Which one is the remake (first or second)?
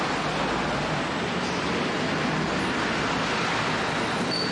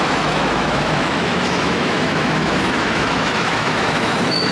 second